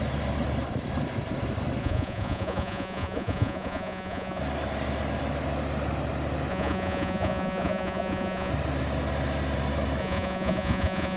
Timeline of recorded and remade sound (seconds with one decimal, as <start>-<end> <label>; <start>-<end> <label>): 0.0-1.8 recorded; 1.8-4.4 remade; 4.4-6.5 recorded; 6.5-8.5 remade; 8.5-10.0 recorded; 10.0-11.2 remade